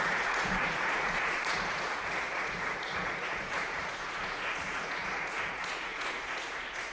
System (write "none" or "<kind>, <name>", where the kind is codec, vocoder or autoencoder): vocoder, Vocos